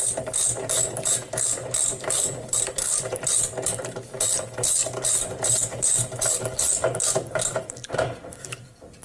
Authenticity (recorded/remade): remade